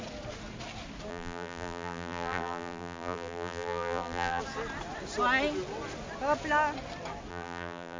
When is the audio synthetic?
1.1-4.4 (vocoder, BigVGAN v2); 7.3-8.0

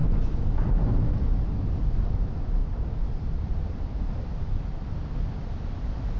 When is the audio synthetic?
2.6-4.9 (vocoder, BigVGAN v2)

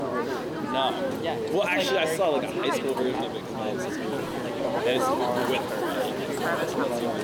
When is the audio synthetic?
2.6-4.8 (vocoder, BigVGAN v2); 5.4-6.1